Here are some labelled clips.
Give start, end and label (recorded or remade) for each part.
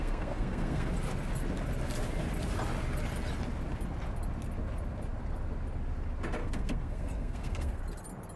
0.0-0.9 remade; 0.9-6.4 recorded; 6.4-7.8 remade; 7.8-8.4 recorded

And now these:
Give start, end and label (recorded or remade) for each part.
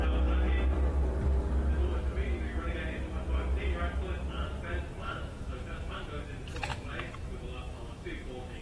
0.0-5.0 recorded; 5.0-6.2 remade; 6.2-6.7 recorded; 6.7-8.6 remade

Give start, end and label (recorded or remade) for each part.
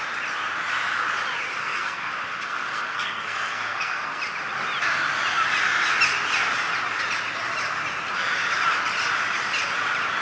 0.0-1.6 recorded; 1.6-4.2 remade; 4.2-10.2 recorded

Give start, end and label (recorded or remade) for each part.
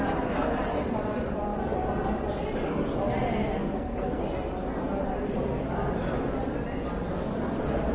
0.0-3.6 recorded; 3.6-4.2 remade; 4.2-7.9 recorded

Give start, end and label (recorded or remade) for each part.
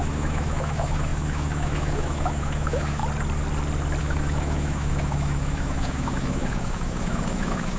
0.0-3.0 remade; 3.0-4.0 recorded; 4.0-7.8 remade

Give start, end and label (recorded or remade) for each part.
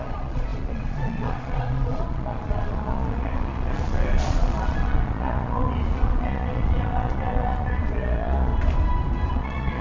0.0-8.5 remade; 8.5-9.3 recorded; 9.3-9.8 remade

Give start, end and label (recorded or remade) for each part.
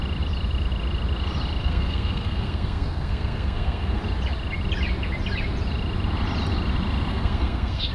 0.0-1.6 recorded; 1.6-4.0 remade; 4.0-7.1 recorded; 7.1-7.9 remade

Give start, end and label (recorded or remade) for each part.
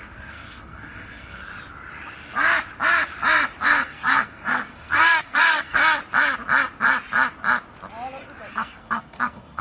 0.0-1.5 remade; 1.5-3.6 recorded; 3.6-5.8 remade; 5.8-8.5 recorded; 8.5-9.6 remade